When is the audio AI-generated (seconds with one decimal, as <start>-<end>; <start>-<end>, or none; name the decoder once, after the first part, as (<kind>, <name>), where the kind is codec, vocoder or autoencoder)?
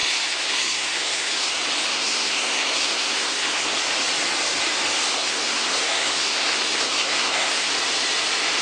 0.0-1.5 (codec, SNAC); 1.9-3.8; 5.1-7.7